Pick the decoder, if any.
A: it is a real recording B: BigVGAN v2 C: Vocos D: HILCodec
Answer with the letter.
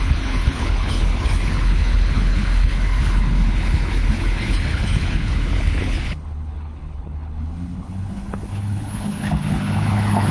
D